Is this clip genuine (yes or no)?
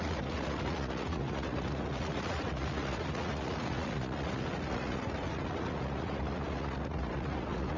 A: no